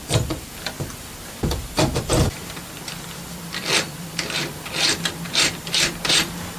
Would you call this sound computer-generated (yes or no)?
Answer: yes